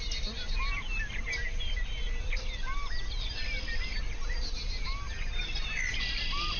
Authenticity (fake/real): real